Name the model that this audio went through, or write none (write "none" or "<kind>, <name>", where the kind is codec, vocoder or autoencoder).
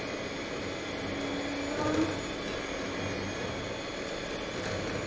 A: none